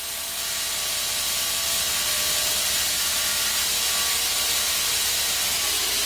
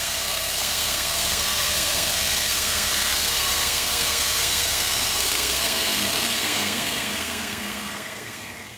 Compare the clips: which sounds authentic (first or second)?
first